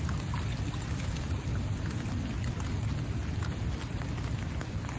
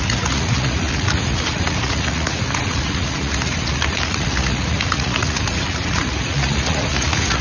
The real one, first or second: first